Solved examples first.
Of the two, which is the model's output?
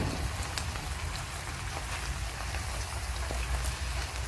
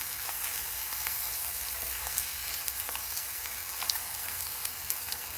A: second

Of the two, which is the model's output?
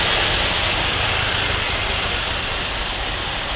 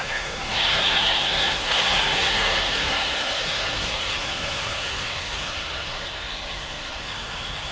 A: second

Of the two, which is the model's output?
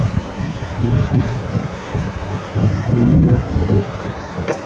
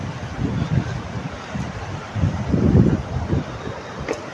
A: first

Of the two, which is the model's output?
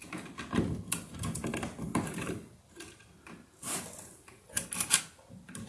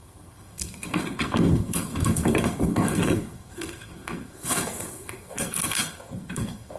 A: second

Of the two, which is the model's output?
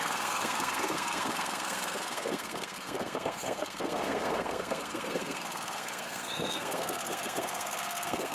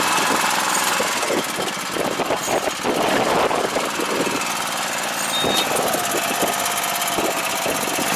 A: first